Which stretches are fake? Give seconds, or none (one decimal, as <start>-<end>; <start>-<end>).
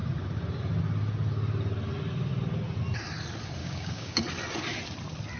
3.6-4.2